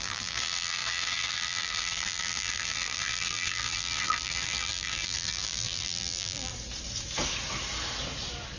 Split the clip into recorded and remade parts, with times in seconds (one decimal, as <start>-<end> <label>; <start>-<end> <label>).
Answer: 0.0-6.5 remade; 6.5-8.6 recorded